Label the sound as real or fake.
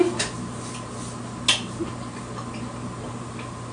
real